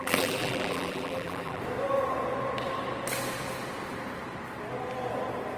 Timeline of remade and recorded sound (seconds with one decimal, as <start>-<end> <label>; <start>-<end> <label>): 0.0-1.6 remade; 1.6-5.6 recorded